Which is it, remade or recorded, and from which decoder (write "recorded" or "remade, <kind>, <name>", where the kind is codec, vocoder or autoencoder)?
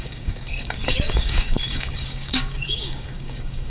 remade, codec, DAC